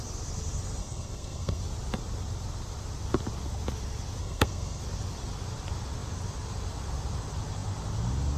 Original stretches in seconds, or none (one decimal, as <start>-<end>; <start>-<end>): 0.0-0.8; 1.6-4.2; 4.8-8.4